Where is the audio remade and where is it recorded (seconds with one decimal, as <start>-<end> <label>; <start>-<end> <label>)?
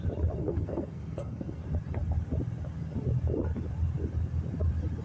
0.0-0.4 recorded; 0.4-1.6 remade; 1.6-5.0 recorded